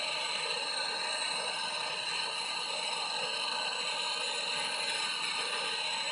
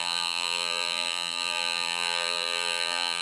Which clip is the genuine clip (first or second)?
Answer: first